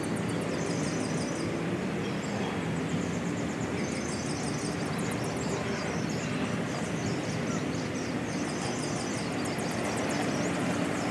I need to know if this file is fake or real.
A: real